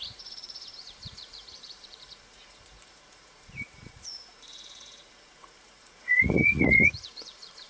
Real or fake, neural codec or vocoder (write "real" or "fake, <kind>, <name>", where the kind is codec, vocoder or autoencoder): fake, vocoder, Vocos